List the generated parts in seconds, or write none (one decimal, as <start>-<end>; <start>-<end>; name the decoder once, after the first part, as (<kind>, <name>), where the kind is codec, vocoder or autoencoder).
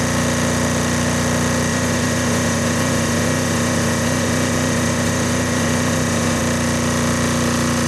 1.7-6.4 (vocoder, Vocos)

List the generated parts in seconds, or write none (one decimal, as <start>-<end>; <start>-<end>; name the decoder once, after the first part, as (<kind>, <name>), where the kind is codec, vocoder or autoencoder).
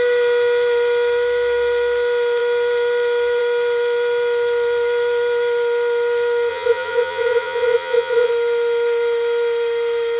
6.5-8.3 (vocoder, Vocos)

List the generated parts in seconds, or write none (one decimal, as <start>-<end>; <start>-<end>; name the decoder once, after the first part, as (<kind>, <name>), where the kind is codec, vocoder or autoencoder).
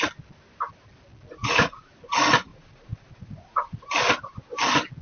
1.4-1.9 (vocoder, Vocos); 2.5-3.8